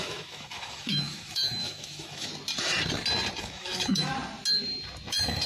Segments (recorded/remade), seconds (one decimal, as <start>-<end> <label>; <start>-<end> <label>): 0.0-2.3 remade; 2.3-3.4 recorded; 3.4-4.1 remade; 4.1-5.1 recorded; 5.1-5.5 remade